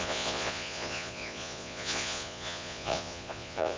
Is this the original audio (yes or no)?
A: no